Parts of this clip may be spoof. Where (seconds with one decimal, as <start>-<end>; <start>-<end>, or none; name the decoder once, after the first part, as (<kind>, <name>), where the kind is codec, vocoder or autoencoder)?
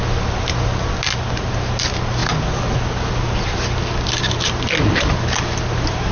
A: none